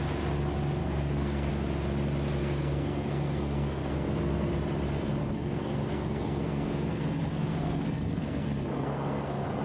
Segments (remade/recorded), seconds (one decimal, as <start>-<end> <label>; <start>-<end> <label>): 0.0-0.8 recorded; 0.8-1.5 remade; 1.5-2.4 recorded; 2.4-4.5 remade; 4.5-5.2 recorded; 5.2-9.6 remade